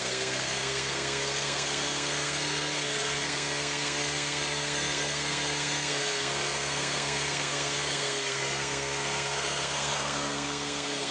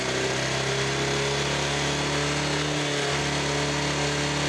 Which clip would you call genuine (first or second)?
second